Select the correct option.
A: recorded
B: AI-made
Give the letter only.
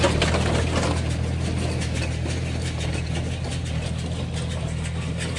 A